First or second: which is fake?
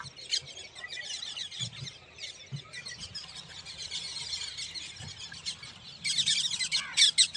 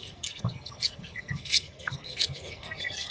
second